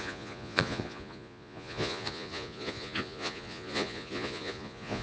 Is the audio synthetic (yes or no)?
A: yes